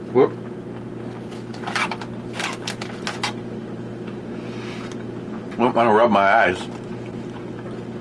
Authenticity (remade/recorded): recorded